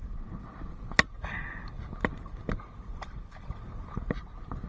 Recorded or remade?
recorded